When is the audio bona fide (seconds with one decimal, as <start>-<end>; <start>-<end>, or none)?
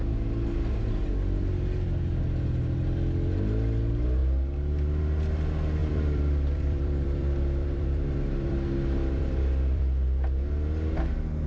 0.0-5.8; 9.8-11.5